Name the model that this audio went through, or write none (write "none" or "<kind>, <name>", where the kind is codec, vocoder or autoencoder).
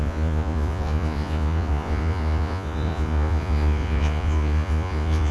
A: vocoder, Vocos